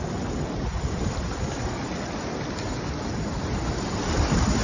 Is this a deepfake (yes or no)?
no